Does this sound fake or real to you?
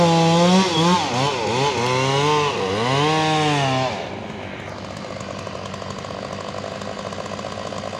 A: real